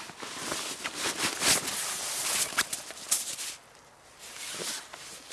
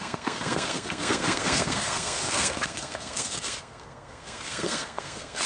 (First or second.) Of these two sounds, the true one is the first